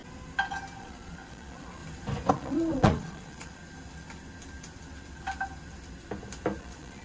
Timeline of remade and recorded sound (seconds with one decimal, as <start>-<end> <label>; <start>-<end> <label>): 0.0-0.8 recorded; 0.8-1.8 remade; 1.8-2.3 recorded; 2.3-3.6 remade; 3.6-6.6 recorded; 6.6-7.0 remade